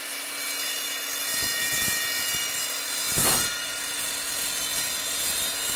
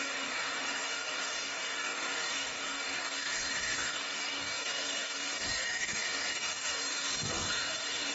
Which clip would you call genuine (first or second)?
first